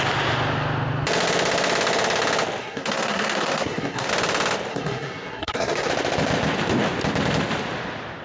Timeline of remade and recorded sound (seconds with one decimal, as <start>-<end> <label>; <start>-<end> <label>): 0.0-2.6 recorded; 2.6-4.1 remade; 4.1-4.7 recorded; 4.7-5.9 remade; 5.9-8.2 recorded